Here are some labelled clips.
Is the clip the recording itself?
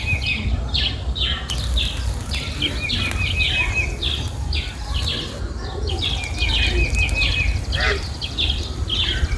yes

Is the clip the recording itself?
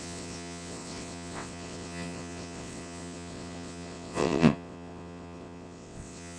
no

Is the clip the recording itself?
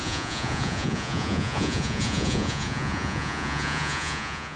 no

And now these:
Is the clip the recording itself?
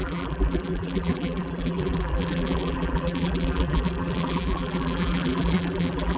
no